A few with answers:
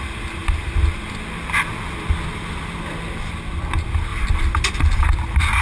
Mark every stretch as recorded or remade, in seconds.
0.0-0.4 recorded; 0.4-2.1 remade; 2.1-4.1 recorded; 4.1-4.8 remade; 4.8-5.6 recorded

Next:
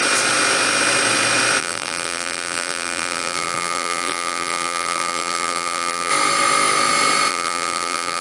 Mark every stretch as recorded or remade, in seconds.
0.0-1.6 recorded; 1.6-6.1 remade; 6.1-7.3 recorded; 7.3-8.2 remade